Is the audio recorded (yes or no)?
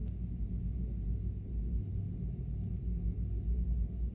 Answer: yes